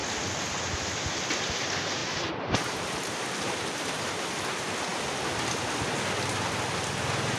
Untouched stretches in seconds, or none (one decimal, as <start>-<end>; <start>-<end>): 0.0-2.0; 4.3-7.4